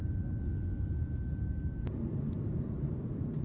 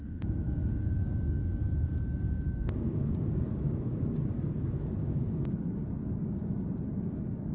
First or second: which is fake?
second